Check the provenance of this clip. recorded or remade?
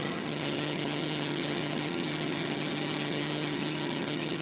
remade